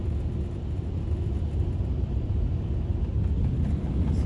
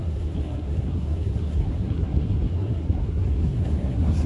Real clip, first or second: first